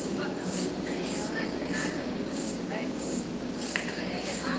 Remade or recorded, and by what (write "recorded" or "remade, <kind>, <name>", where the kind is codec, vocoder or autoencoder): remade, codec, DAC